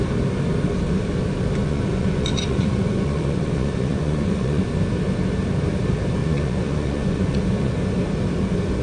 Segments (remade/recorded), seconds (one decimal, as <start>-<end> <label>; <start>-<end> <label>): 0.0-1.6 recorded; 1.6-4.6 remade; 4.6-6.2 recorded; 6.2-7.7 remade; 7.7-8.8 recorded